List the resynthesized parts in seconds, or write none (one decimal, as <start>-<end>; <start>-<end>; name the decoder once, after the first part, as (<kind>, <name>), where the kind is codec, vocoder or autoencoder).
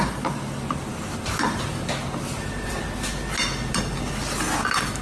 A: none